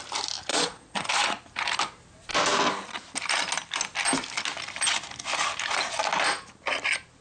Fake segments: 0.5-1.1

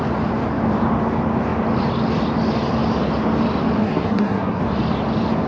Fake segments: 3.8-4.6

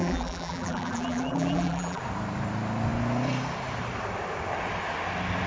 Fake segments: 0.0-2.0

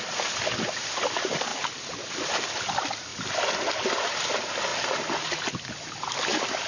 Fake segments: none

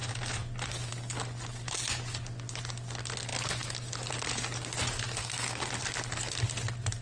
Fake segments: 5.2-5.7

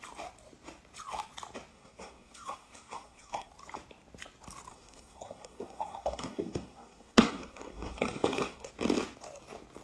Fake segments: 1.7-3.5; 4.7-8.7

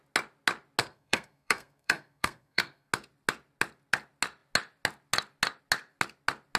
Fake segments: 0.8-2.9